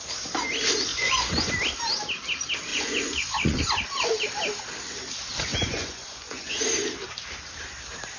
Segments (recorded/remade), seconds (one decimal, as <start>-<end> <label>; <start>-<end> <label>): 0.0-0.9 recorded; 0.9-1.5 remade; 1.5-2.7 recorded; 2.7-3.6 remade; 3.6-5.5 recorded; 5.5-6.5 remade; 6.5-8.2 recorded